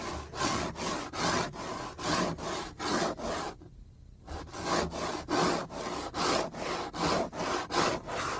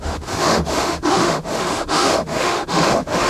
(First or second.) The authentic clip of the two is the first